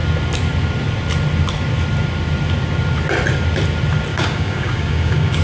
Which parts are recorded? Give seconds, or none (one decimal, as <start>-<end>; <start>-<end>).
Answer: 0.0-4.1